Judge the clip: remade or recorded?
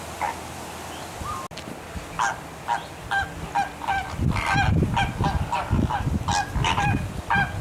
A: recorded